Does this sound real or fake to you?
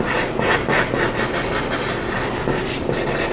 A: real